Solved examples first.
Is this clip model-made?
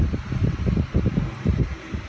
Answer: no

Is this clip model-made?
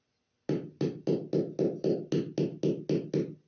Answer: no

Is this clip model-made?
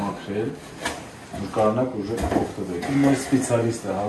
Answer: no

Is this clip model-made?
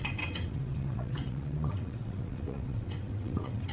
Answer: yes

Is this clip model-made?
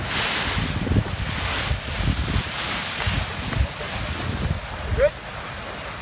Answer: no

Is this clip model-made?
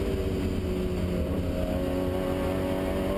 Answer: no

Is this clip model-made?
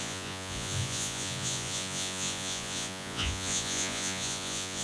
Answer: yes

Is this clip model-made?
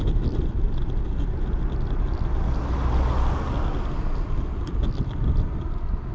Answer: no